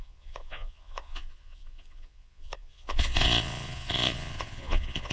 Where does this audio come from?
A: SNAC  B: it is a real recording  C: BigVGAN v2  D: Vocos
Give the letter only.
D